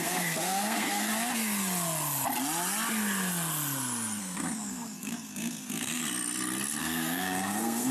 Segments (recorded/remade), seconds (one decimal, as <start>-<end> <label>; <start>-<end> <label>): 0.0-1.1 remade; 1.1-4.2 recorded; 4.2-6.0 remade; 6.0-6.8 recorded; 6.8-7.9 remade